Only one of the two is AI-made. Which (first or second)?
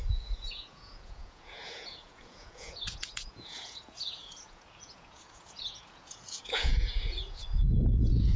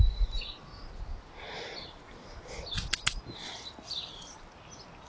first